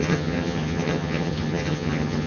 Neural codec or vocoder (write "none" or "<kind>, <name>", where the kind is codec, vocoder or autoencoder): vocoder, HiFi-GAN